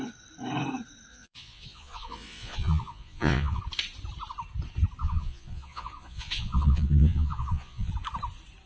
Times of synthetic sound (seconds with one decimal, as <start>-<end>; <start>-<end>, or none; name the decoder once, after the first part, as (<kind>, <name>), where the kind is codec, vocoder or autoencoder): 1.1-3.6 (vocoder, Vocos); 5.0-7.9